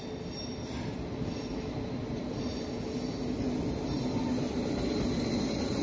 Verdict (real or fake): real